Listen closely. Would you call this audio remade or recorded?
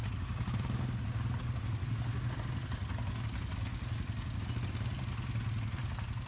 recorded